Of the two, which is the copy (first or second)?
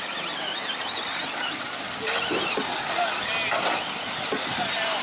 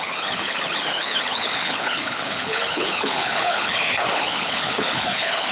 second